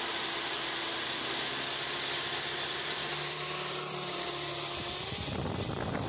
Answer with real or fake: fake